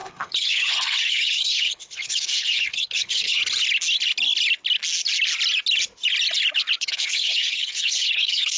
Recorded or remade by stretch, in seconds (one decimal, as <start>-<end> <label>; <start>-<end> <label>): 0.0-3.4 remade; 3.4-6.8 recorded; 6.8-8.6 remade